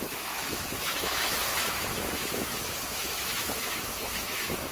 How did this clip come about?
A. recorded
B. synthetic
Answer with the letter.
B